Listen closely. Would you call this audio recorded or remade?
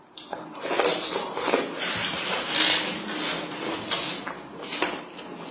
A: recorded